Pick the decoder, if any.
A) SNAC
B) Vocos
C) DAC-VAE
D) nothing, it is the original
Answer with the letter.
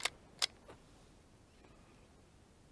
D